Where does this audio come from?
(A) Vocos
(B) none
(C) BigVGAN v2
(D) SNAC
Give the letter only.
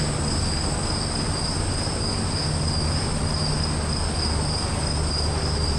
B